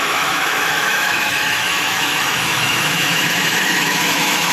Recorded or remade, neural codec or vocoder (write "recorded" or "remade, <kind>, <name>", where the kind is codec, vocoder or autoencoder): remade, autoencoder, DAC-VAE